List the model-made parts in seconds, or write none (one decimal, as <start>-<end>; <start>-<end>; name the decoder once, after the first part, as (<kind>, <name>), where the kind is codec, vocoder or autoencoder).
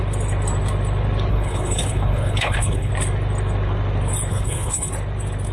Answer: 1.3-2.9 (codec, HILCodec); 4.3-4.9